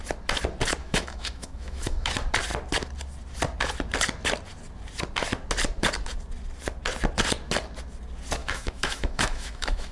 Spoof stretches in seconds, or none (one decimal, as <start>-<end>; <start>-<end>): 0.8-2.1; 8.4-9.9